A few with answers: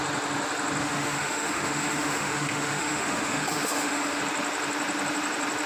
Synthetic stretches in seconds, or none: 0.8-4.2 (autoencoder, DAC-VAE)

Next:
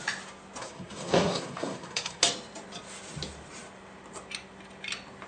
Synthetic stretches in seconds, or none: 0.6-2.2 (codec, SNAC)

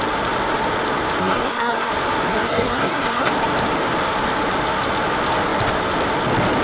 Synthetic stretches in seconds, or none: 1.2-1.9 (codec, SNAC); 2.3-3.3

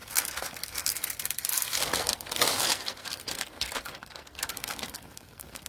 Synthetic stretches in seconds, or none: 0.0-5.7 (codec, SNAC)

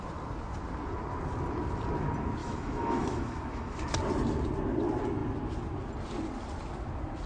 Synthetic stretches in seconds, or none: 2.4-3.8 (autoencoder, DAC-VAE)

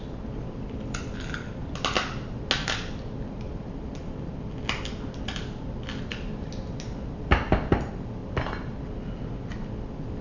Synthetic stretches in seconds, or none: none

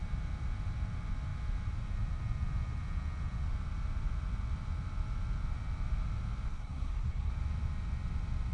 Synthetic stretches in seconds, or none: 6.5-7.3 (codec, SNAC)